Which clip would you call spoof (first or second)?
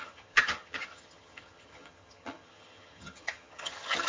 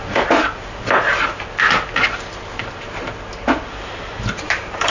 first